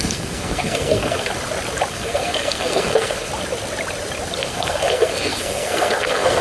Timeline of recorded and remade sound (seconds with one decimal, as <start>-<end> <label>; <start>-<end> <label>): 0.0-1.3 remade; 1.3-1.9 recorded; 1.9-3.3 remade; 3.3-4.4 recorded; 4.4-6.4 remade